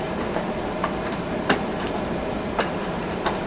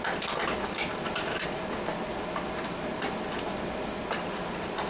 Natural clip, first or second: second